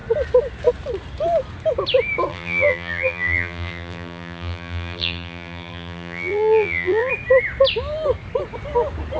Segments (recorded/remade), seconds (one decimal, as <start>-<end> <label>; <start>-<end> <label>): 0.0-2.3 recorded; 2.3-7.1 remade; 7.1-9.2 recorded